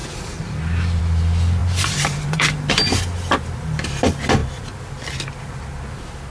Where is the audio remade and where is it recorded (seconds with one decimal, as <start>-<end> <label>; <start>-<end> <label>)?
0.0-1.6 recorded; 1.6-2.7 remade; 2.7-6.3 recorded